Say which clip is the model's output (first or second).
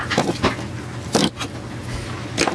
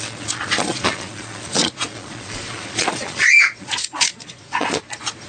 second